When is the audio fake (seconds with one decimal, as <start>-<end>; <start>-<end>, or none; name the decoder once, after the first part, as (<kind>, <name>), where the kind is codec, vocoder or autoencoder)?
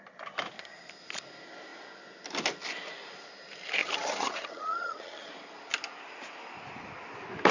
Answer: 3.8-5.3 (vocoder, HiFi-GAN)